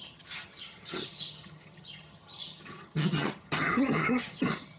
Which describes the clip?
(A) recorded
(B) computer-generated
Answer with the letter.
B